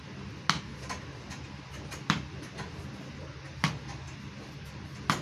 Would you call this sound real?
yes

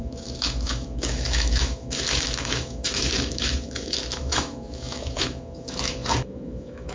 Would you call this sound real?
no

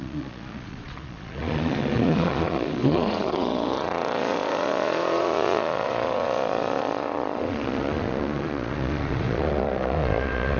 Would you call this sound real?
no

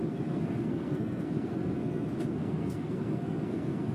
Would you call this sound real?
no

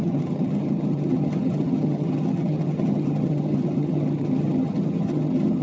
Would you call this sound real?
no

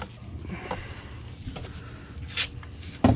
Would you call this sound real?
yes